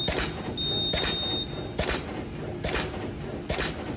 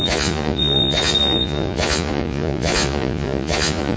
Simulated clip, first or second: second